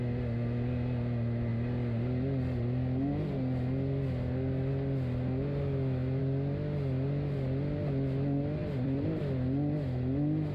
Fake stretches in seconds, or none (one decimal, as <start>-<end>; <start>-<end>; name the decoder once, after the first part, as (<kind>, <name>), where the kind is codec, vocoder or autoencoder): 8.6-9.2 (vocoder, BigVGAN v2)